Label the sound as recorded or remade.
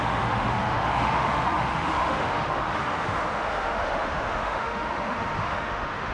remade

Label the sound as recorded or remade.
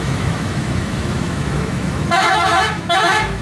remade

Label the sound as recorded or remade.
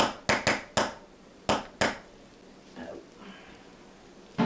recorded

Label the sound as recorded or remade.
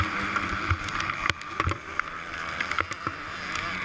recorded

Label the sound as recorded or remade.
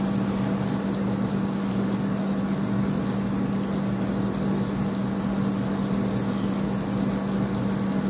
recorded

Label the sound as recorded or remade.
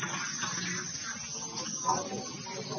recorded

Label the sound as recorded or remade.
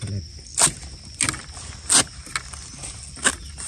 recorded